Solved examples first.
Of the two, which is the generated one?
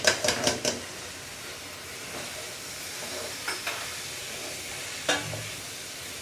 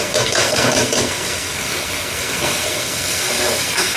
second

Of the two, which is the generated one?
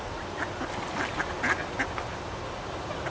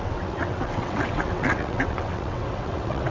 second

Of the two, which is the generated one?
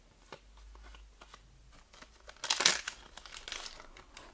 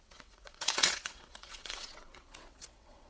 second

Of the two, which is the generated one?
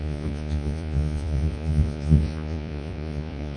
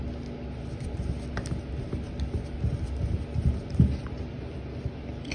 first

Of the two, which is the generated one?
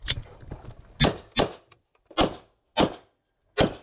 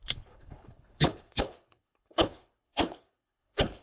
second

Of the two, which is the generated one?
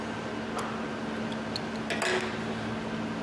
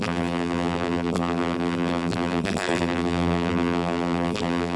second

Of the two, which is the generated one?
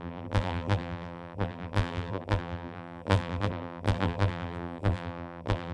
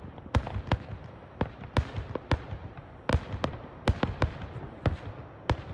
first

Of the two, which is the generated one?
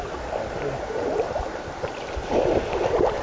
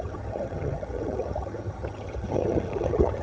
second